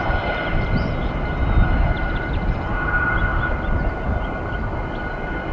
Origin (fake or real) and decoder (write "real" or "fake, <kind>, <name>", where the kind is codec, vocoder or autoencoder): real